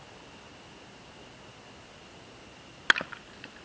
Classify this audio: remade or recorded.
recorded